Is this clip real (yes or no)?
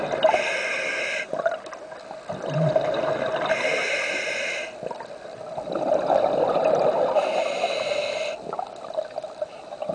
yes